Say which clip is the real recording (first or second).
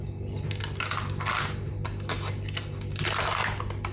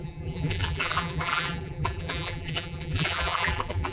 first